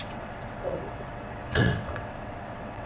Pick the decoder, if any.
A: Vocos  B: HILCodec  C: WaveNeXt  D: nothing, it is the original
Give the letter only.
C